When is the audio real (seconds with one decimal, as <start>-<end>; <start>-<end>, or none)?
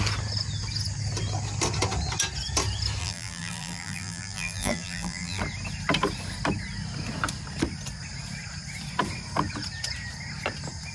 0.0-3.0; 5.4-10.9